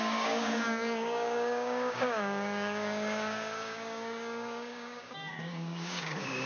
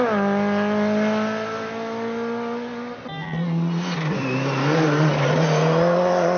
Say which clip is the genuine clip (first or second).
second